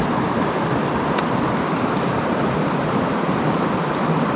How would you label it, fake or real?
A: real